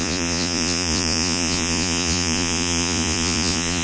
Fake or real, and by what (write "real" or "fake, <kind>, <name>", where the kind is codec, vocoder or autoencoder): fake, vocoder, Vocos